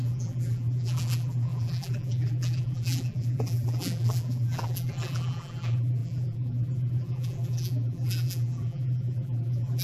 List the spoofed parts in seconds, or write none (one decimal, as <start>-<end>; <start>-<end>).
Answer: 0.0-9.8